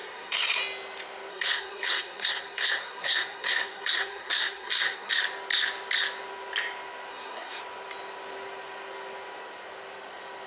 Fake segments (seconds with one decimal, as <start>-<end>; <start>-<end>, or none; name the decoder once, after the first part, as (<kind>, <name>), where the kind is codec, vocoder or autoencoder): 0.0-0.6 (codec, SNAC); 1.3-5.1; 7.1-7.6